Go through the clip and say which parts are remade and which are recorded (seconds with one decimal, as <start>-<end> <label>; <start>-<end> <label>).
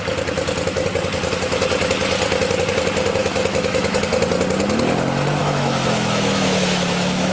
0.0-3.2 recorded; 3.2-4.0 remade; 4.0-5.4 recorded; 5.4-7.3 remade